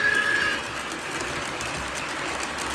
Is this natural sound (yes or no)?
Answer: yes